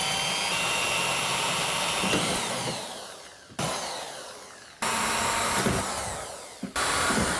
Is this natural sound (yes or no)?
yes